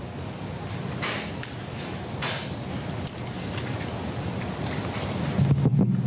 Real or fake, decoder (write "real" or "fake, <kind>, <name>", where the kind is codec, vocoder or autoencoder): real